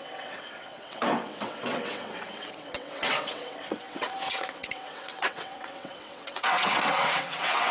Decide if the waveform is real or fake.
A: fake